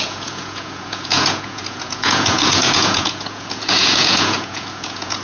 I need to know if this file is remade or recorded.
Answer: remade